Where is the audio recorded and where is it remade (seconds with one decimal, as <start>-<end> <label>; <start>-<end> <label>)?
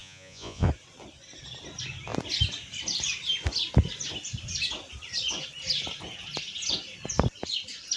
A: 0.0-0.7 remade; 0.7-8.0 recorded